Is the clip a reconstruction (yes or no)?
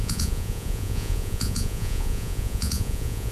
yes